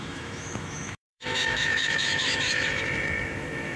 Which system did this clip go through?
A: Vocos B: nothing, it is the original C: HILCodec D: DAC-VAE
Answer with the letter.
D